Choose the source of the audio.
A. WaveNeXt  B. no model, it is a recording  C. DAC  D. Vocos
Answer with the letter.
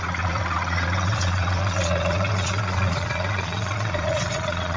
D